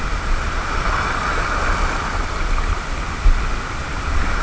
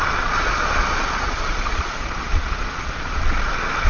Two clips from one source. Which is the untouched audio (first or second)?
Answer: first